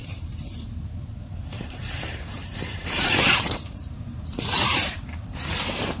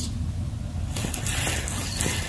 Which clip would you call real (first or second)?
second